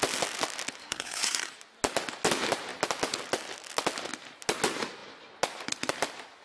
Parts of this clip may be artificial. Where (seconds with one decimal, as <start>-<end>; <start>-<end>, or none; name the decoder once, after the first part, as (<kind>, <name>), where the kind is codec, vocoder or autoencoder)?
0.8-1.5 (codec, SNAC)